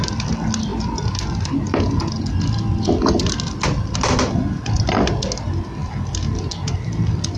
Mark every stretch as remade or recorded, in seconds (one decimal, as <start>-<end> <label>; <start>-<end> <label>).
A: 0.0-7.4 recorded